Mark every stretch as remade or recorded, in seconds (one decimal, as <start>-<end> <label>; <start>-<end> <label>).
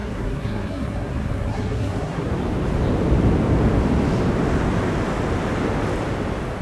0.0-2.3 remade; 2.3-6.6 recorded